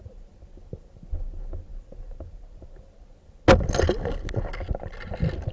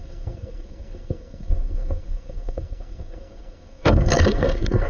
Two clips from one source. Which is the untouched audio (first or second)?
first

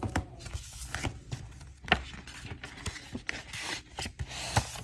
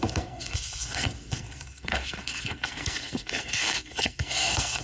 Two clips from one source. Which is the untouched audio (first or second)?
first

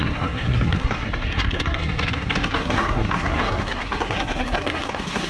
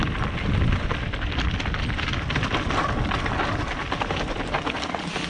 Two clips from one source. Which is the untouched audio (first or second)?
second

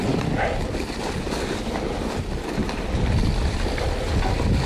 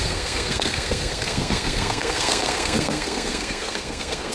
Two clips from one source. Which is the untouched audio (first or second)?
first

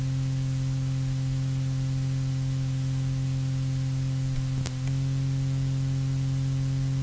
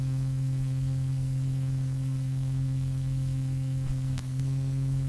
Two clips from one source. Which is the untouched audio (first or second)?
first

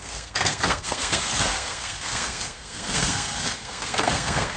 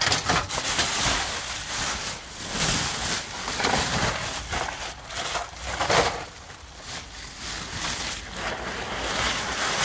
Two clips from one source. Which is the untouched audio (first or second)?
second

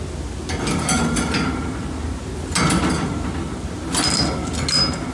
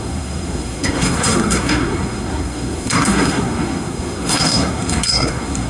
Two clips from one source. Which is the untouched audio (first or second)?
first